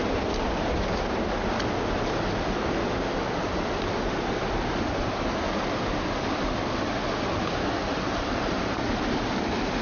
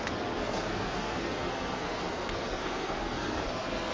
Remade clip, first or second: second